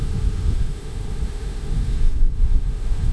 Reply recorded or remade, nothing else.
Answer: remade